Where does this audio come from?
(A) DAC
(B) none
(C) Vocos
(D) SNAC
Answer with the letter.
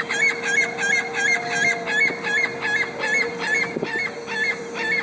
B